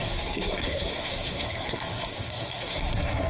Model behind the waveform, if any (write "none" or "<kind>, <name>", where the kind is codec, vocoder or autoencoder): codec, SNAC